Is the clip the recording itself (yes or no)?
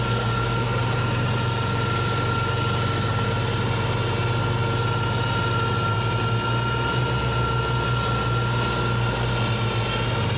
yes